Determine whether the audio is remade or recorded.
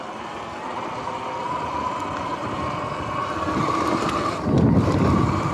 recorded